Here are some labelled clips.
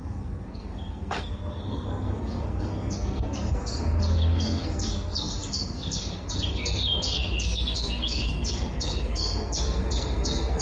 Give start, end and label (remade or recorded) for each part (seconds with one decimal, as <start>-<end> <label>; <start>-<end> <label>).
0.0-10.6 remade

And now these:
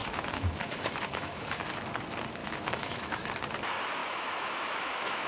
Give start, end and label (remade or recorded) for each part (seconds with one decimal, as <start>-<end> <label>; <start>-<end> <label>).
0.0-1.5 remade; 1.5-2.4 recorded; 2.4-3.3 remade; 3.3-4.0 recorded; 4.0-5.3 remade

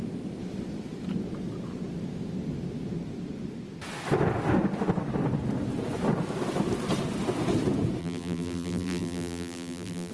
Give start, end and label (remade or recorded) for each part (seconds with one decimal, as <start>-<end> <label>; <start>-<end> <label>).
0.0-8.0 recorded; 8.0-10.1 remade

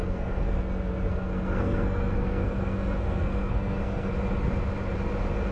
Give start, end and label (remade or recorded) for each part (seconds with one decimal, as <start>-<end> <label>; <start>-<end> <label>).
0.0-0.6 remade; 0.6-1.1 recorded; 1.1-4.1 remade; 4.1-5.5 recorded

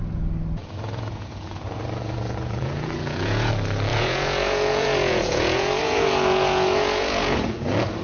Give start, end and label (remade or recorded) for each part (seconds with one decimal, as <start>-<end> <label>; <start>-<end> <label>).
0.0-0.6 recorded; 0.6-3.5 remade; 3.5-3.9 recorded; 3.9-7.6 remade; 7.6-8.0 recorded

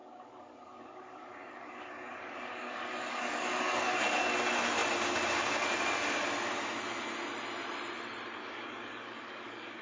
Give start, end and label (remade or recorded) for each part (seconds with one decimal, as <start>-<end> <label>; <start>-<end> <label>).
0.0-4.3 remade; 4.3-8.4 recorded; 8.4-9.8 remade

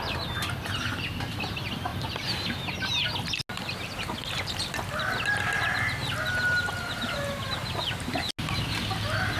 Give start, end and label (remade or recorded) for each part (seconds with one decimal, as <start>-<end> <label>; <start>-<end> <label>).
0.0-9.4 recorded